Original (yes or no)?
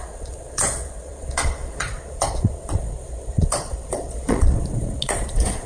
no